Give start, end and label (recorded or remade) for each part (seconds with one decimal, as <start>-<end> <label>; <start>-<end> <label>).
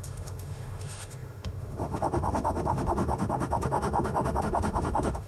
0.0-5.3 remade